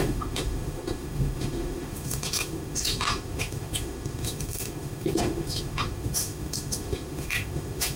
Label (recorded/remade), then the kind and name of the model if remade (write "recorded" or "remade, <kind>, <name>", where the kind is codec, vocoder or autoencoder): remade, autoencoder, DAC-VAE